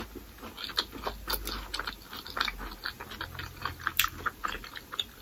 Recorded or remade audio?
recorded